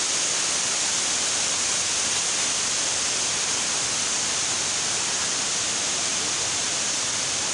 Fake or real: fake